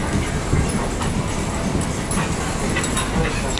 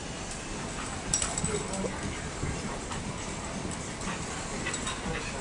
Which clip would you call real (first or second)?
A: first